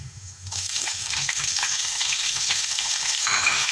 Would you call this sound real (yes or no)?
no